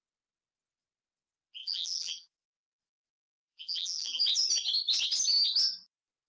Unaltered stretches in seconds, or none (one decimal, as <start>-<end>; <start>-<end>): 0.0-1.6; 4.2-6.3